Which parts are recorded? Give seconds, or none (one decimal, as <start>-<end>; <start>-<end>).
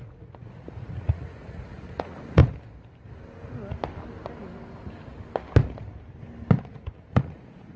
2.4-7.1